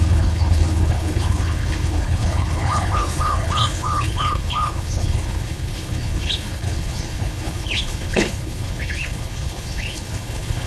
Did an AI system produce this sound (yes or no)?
yes